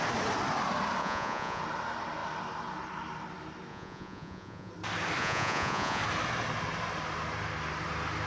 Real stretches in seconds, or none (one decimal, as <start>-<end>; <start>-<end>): 0.0-1.0; 1.6-3.7; 4.7-5.2; 6.0-8.3